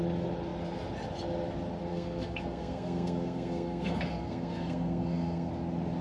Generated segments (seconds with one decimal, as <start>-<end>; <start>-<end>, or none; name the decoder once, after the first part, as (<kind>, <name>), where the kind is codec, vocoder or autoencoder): 1.9-5.5 (codec, SNAC)